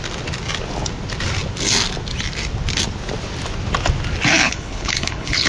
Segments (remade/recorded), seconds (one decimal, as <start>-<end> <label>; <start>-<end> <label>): 0.0-4.4 recorded; 4.4-5.5 remade